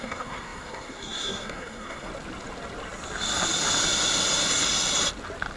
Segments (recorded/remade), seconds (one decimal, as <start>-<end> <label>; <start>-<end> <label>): 0.0-2.1 remade; 2.1-5.6 recorded